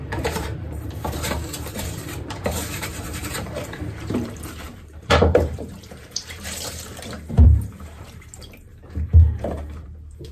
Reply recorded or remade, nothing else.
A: remade